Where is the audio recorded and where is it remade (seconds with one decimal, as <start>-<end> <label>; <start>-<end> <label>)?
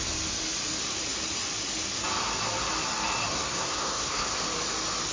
0.0-3.3 recorded; 3.3-4.3 remade; 4.3-5.1 recorded